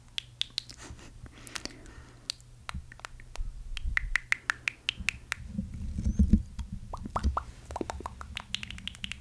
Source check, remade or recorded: recorded